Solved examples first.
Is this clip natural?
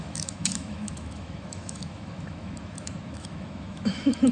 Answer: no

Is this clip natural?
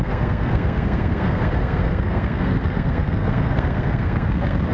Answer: no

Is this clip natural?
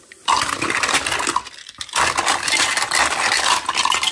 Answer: yes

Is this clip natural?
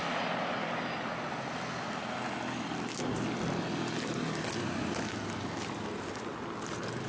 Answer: yes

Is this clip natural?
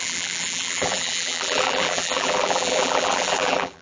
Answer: no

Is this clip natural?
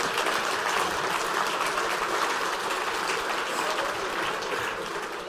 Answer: yes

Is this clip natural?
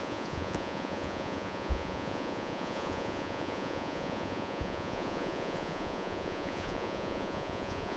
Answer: no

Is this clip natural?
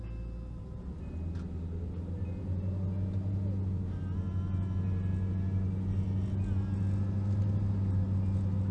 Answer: yes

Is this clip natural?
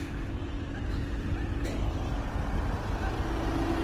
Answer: yes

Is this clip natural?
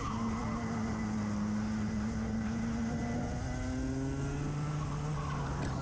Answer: yes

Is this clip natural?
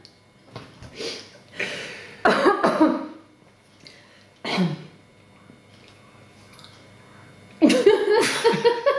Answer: yes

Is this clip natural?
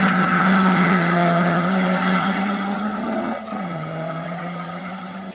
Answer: no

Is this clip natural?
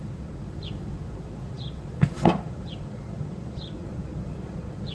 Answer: no